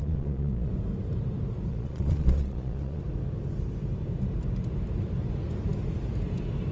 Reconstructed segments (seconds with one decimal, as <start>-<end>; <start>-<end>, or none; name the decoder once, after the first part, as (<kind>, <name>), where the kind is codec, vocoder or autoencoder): 0.0-0.7 (vocoder, Vocos); 1.7-3.0